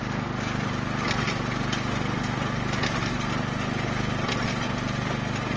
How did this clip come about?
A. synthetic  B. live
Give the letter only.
B